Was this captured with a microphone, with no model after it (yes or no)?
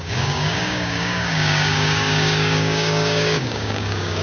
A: no